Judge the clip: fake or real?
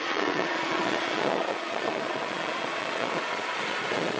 fake